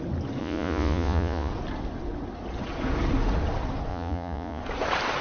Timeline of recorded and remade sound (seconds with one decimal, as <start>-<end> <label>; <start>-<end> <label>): 0.0-0.4 recorded; 0.4-1.5 remade; 1.5-3.9 recorded; 3.9-4.6 remade; 4.6-5.2 recorded